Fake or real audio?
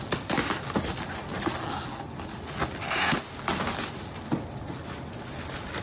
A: real